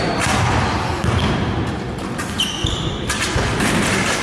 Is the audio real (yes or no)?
no